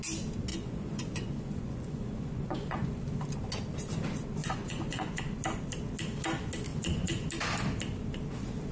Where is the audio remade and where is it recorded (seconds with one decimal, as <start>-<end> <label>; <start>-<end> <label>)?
0.0-0.5 recorded; 0.5-3.0 remade; 3.0-4.4 recorded; 4.4-5.2 remade; 5.2-6.7 recorded; 6.7-7.3 remade; 7.3-8.7 recorded